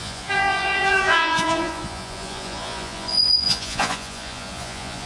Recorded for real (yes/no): no